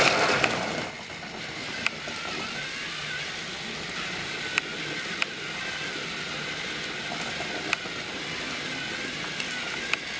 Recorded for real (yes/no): yes